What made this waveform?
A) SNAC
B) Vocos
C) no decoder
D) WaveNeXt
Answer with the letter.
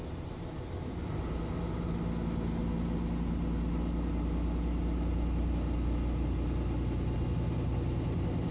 C